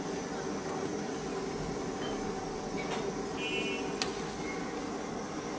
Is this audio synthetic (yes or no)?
no